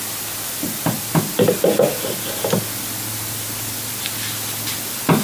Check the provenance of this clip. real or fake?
real